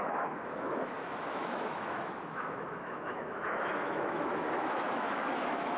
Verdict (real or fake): fake